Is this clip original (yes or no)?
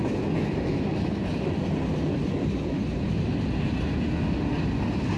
yes